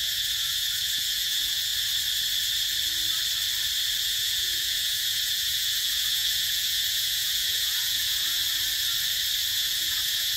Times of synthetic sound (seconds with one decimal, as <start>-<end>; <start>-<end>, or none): 0.0-1.7; 4.0-8.4; 9.5-10.4

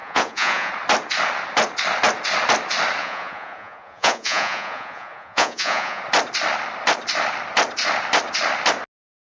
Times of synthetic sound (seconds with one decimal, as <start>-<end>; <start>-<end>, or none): 0.0-0.7; 3.0-6.0

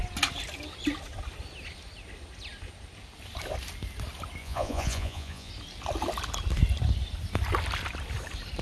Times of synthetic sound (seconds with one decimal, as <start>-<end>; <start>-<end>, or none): 4.4-5.5

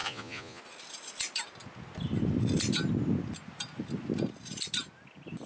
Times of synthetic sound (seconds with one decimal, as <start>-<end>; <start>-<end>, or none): 0.0-0.6